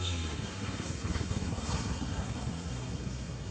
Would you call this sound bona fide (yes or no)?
no